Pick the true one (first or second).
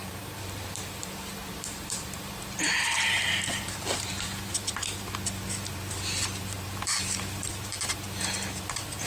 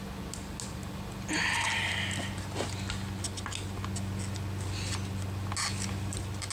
second